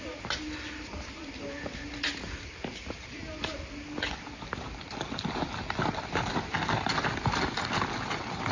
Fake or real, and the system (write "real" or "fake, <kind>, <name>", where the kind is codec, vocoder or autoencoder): real